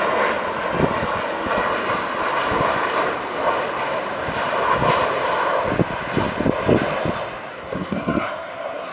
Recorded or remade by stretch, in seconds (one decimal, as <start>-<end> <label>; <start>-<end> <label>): 0.0-7.5 recorded; 7.5-8.9 remade